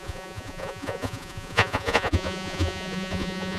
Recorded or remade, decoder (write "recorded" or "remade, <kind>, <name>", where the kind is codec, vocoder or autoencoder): remade, vocoder, Vocos